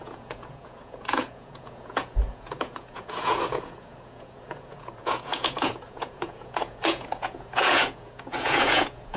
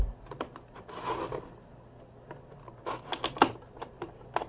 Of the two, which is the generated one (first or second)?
first